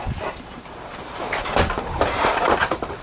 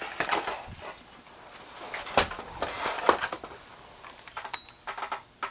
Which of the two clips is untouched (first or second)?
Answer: second